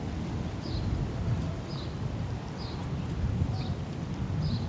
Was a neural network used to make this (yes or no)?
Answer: no